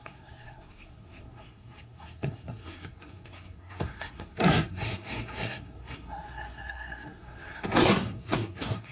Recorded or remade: remade